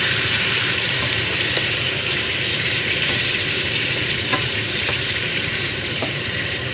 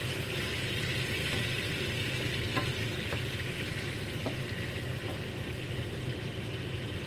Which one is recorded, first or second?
second